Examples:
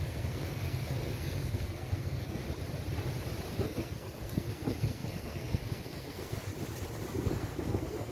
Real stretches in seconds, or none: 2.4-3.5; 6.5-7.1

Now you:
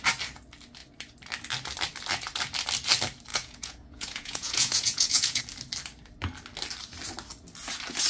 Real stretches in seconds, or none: 0.0-3.3; 5.4-8.1

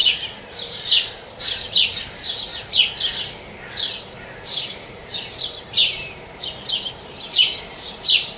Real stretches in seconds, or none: 2.5-3.9

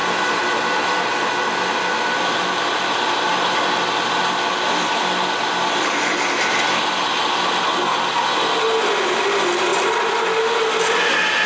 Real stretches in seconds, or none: 0.0-11.5

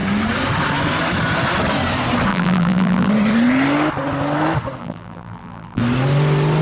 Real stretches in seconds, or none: 0.0-2.3; 3.1-4.8; 5.8-6.6

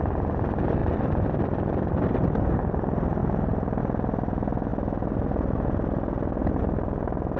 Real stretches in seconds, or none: 0.0-0.8; 2.6-3.2; 3.8-7.4

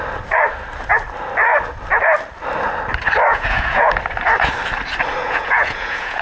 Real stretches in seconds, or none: 0.0-3.3; 3.9-5.2

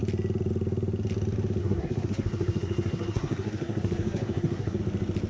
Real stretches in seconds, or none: 0.0-1.6; 4.8-5.3